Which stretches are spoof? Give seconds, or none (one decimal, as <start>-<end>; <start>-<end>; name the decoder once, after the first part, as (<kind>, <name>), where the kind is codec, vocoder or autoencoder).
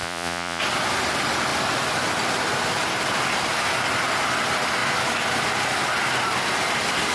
0.0-0.6 (vocoder, Vocos)